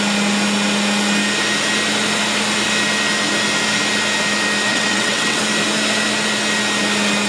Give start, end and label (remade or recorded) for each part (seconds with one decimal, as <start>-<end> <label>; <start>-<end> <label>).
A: 0.0-4.7 recorded; 4.7-5.4 remade; 5.4-7.3 recorded

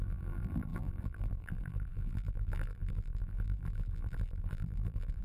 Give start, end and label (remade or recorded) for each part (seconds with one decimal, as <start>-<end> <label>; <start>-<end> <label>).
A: 0.0-5.2 remade